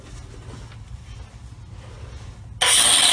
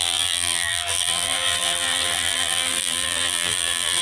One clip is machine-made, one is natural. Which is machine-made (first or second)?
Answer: second